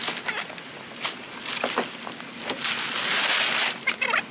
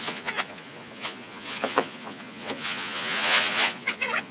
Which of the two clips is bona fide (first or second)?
first